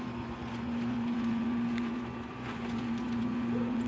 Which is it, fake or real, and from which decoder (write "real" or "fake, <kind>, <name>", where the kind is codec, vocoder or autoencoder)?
fake, vocoder, Vocos